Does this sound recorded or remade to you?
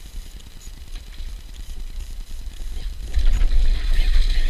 recorded